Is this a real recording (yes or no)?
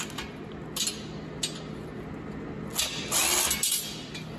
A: yes